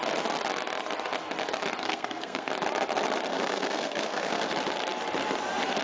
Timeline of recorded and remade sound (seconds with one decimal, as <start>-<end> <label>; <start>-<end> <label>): 0.0-1.8 recorded; 1.8-2.5 remade; 2.5-3.3 recorded; 3.3-4.5 remade; 4.5-5.8 recorded